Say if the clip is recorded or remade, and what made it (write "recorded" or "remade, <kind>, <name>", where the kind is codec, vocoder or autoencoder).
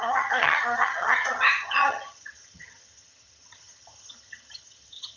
remade, vocoder, HiFi-GAN